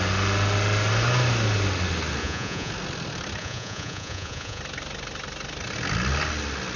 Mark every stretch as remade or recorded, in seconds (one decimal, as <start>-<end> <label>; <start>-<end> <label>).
0.0-2.2 recorded; 2.2-2.7 remade; 2.7-3.4 recorded; 3.4-4.6 remade; 4.6-6.8 recorded